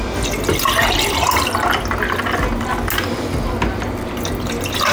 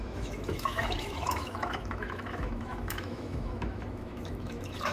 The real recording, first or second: first